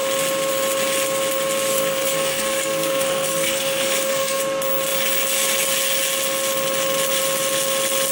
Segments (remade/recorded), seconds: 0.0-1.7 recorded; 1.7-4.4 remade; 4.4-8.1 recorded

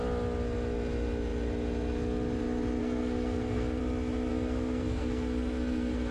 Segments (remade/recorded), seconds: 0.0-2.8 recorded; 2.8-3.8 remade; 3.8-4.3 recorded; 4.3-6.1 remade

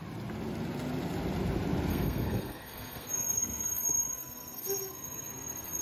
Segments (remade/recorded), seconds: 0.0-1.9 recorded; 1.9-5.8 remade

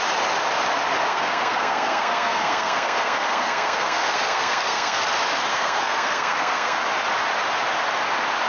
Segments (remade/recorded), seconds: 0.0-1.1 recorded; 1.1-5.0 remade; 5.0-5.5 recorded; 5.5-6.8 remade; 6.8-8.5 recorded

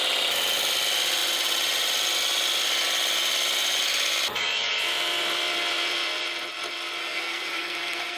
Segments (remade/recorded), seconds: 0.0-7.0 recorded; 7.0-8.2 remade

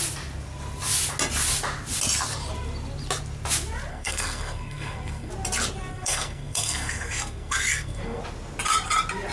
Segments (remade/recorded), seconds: 0.0-3.9 recorded; 3.9-5.3 remade; 5.3-5.9 recorded; 5.9-8.2 remade; 8.2-9.3 recorded